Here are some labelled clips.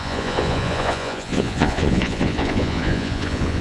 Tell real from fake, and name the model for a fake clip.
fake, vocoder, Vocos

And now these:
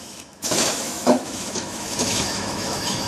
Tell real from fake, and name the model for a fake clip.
fake, autoencoder, DAC-VAE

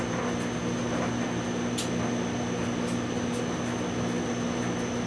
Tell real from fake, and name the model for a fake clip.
real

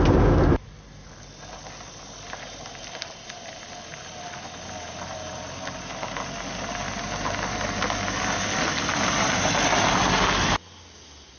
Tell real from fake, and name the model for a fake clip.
real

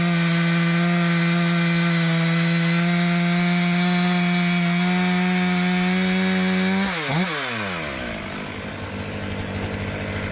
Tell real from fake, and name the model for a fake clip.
real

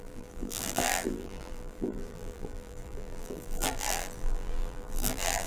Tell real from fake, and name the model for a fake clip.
fake, vocoder, BigVGAN v2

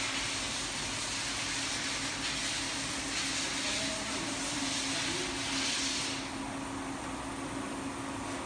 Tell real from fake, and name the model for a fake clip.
real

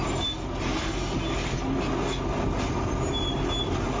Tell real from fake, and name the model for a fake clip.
real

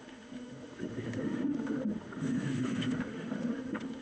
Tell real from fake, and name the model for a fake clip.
fake, autoencoder, DAC-VAE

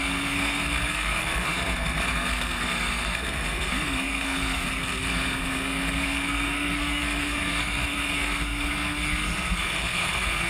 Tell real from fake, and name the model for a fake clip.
fake, codec, SNAC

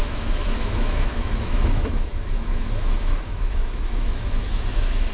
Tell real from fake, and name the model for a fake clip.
fake, autoencoder, DAC-VAE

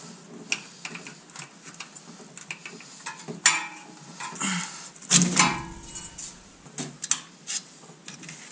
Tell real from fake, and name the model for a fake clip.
real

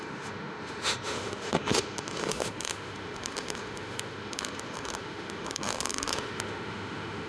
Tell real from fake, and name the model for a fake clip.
fake, autoencoder, DAC-VAE